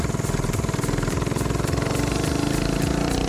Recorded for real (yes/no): yes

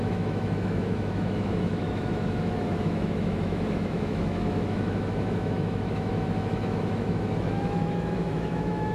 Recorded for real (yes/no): no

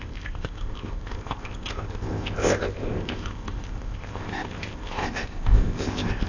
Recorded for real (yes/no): no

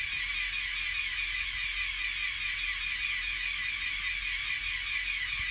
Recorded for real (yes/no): yes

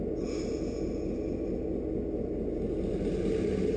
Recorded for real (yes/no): yes